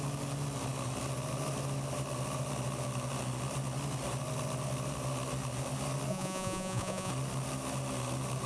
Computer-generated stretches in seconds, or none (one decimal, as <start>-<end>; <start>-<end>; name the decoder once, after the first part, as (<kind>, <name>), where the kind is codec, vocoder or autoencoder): 6.1-7.1 (vocoder, Vocos)